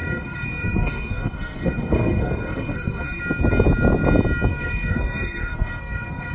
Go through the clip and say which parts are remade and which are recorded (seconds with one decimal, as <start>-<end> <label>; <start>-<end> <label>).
0.0-3.2 remade; 3.2-4.5 recorded; 4.5-6.3 remade